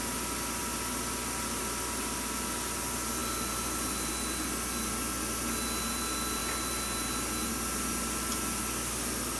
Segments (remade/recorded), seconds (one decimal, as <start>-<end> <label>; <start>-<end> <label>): 0.0-9.4 recorded